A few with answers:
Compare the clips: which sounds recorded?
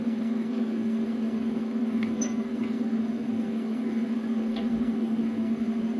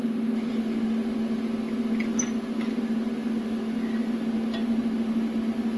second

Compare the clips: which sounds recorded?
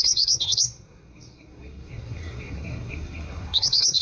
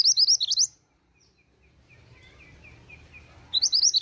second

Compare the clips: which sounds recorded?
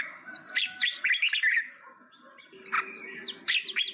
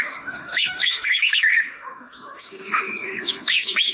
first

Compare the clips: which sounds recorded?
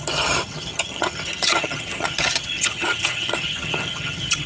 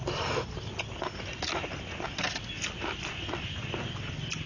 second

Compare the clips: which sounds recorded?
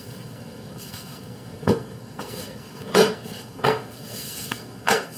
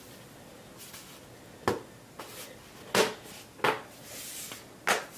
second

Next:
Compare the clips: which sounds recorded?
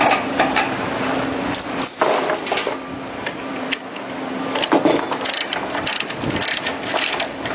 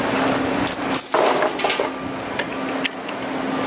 second